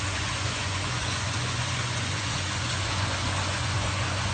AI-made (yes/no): yes